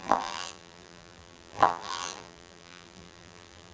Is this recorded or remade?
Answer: remade